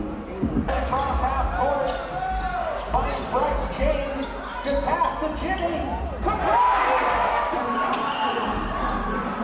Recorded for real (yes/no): yes